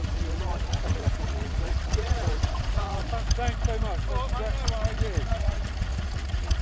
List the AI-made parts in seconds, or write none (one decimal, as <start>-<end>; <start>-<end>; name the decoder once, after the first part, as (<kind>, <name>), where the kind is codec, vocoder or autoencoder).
0.0-3.0 (vocoder, Vocos); 5.3-6.6